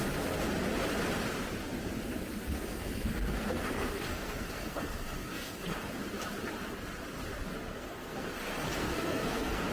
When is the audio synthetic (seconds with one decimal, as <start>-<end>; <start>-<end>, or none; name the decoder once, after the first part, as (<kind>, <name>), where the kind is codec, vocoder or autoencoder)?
2.7-6.0 (codec, SNAC); 7.7-9.7